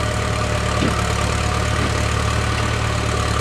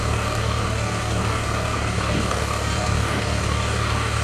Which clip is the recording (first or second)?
first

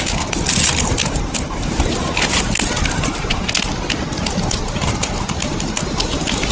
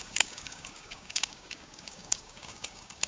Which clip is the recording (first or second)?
first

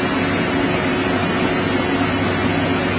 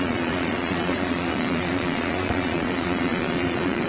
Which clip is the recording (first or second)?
first